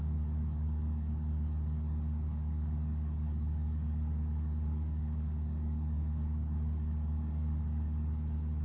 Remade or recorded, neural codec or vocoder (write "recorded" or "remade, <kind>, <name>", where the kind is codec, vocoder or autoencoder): remade, codec, DAC